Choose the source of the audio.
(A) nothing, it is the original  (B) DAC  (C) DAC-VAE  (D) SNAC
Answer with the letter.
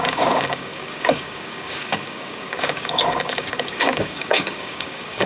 B